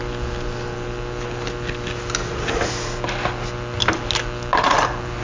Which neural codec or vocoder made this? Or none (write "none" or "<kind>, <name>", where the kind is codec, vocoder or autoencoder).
none